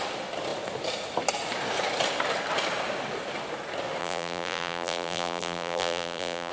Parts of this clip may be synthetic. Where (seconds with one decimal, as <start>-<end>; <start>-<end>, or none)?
4.0-6.5